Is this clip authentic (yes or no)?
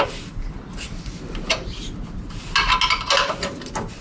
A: yes